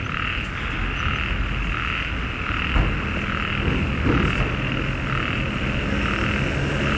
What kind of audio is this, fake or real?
real